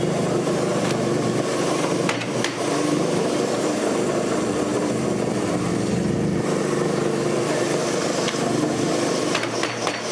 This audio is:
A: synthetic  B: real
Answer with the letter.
A